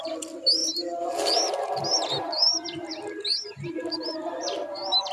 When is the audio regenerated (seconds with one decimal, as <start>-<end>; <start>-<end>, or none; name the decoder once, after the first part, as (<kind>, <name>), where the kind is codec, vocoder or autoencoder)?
none